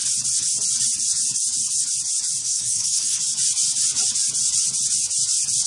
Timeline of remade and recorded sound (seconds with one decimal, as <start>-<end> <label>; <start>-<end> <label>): 0.0-2.4 recorded; 2.4-3.2 remade; 3.2-5.7 recorded